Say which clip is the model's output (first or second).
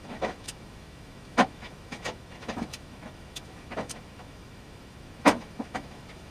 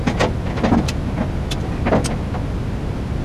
first